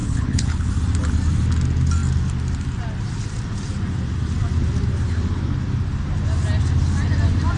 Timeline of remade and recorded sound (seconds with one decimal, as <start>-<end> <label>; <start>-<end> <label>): 0.0-0.7 remade; 0.7-7.6 recorded